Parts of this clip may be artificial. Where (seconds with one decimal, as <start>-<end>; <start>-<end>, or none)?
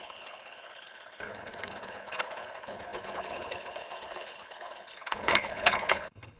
0.0-6.4